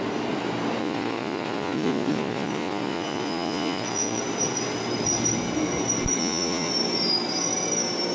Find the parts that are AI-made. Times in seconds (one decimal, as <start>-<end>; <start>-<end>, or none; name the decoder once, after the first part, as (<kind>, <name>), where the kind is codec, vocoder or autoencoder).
0.8-4.2 (vocoder, Vocos); 6.2-6.7